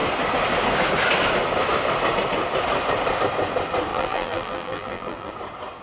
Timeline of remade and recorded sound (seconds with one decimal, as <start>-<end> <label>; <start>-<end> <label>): 0.0-3.9 recorded; 3.9-5.3 remade; 5.3-5.8 recorded